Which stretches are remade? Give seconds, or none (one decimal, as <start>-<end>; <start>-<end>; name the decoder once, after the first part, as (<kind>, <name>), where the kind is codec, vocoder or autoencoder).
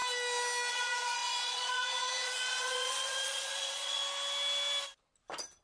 0.7-4.0 (vocoder, Vocos)